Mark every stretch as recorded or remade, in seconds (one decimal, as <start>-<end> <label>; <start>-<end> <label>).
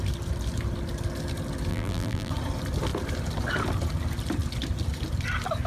0.0-1.7 recorded; 1.7-2.3 remade; 2.3-5.7 recorded